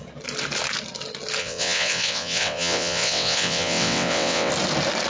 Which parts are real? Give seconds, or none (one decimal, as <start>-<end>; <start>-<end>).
0.0-1.4; 4.5-5.1